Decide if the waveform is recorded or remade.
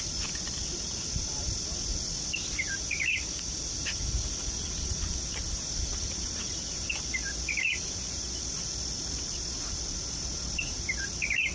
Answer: recorded